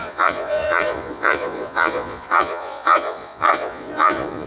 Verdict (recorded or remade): remade